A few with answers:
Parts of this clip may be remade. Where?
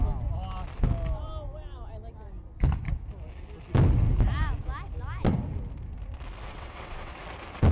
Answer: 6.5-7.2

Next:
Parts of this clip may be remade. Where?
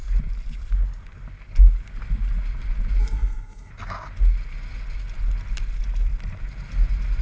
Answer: 3.0-3.7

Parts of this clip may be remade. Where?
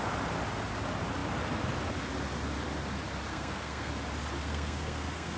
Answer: 3.3-3.9; 4.4-5.4